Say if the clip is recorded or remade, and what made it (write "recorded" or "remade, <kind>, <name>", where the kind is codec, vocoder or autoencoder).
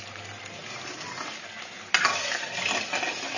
recorded